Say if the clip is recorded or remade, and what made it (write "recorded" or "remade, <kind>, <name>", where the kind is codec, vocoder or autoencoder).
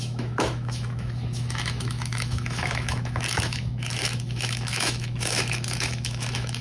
remade, autoencoder, DAC-VAE